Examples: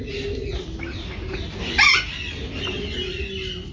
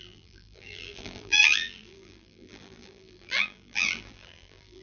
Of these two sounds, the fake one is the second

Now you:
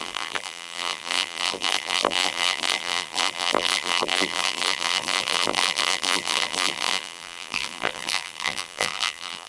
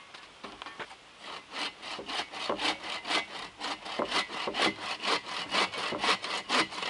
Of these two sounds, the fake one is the first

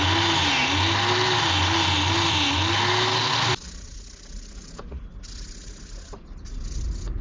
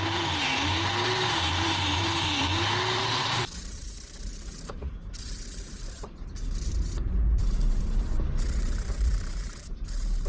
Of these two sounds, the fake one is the second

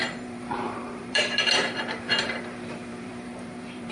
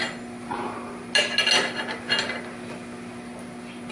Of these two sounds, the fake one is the first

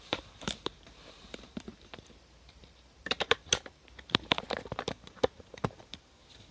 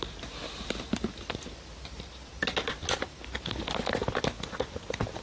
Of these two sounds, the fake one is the first